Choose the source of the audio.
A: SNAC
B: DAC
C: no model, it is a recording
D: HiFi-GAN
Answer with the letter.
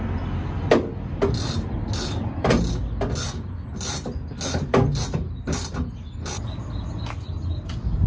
C